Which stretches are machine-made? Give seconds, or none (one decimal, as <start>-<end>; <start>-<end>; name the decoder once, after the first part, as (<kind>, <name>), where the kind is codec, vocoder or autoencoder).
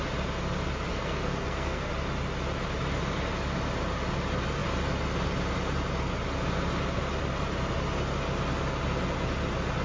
0.9-1.9 (codec, SNAC)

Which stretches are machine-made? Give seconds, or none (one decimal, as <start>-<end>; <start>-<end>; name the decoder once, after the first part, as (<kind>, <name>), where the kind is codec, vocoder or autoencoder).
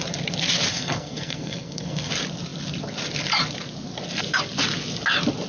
0.7-2.1 (codec, SNAC)